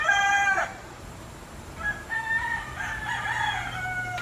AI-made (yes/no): yes